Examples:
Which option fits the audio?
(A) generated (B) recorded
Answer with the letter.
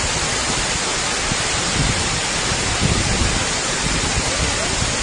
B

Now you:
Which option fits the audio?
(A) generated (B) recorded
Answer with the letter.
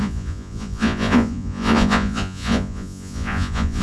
A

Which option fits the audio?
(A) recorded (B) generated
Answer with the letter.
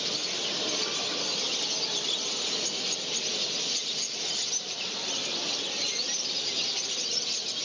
A